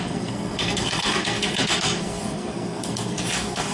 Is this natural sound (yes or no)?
no